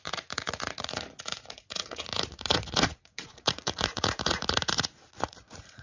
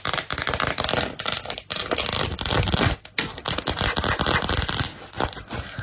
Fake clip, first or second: first